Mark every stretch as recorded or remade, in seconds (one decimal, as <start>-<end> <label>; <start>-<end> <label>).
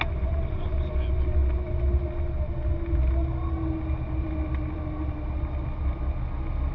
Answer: 0.0-6.7 recorded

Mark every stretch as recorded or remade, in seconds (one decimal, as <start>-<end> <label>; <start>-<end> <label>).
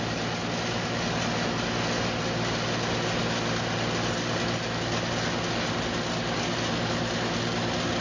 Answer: 0.0-8.0 recorded